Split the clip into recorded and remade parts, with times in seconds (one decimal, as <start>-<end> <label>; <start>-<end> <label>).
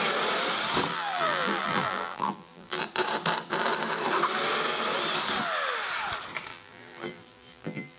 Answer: 0.0-0.9 recorded; 0.9-2.8 remade; 2.8-6.5 recorded; 6.5-8.0 remade